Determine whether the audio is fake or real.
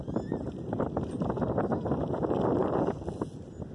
real